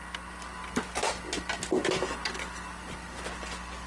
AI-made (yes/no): no